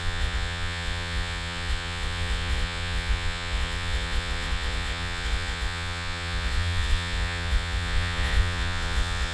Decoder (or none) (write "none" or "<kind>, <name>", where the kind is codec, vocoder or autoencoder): vocoder, Vocos